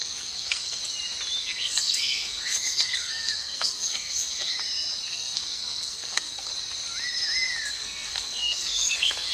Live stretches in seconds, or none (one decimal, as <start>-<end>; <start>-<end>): 0.8-1.4; 4.5-5.1; 6.5-7.7